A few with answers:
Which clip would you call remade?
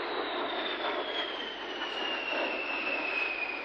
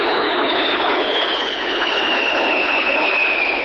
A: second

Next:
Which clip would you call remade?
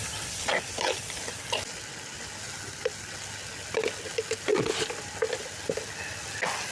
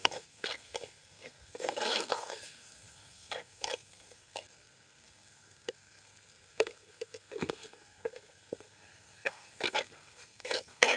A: second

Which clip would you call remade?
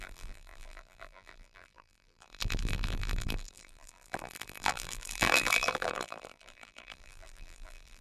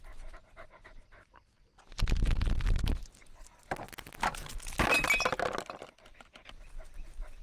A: first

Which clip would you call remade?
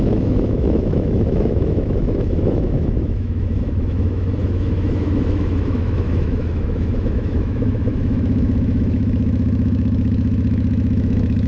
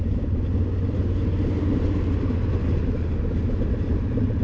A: first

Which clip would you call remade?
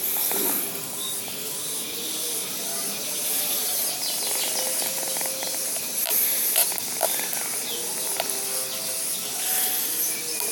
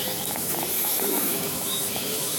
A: second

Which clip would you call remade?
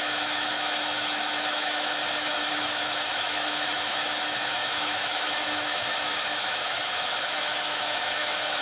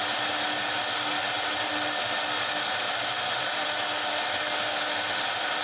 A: first